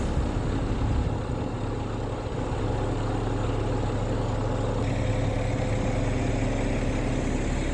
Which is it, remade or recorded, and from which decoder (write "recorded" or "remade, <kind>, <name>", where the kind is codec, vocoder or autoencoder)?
recorded